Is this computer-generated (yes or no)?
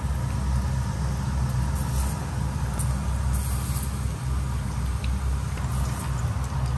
no